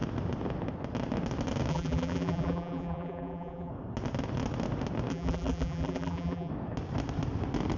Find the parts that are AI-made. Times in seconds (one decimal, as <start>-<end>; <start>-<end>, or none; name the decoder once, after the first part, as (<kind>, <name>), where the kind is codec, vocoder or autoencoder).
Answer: 1.7-3.7 (vocoder, BigVGAN v2); 5.1-6.5